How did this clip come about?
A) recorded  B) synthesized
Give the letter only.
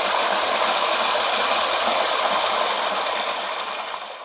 A